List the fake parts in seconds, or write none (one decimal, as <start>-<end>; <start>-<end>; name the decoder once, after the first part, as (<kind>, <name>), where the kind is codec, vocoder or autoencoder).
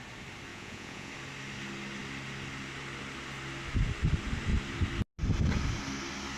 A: 0.5-1.1 (vocoder, Vocos)